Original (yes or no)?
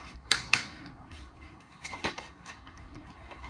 no